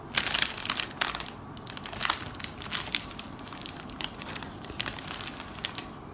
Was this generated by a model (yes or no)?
no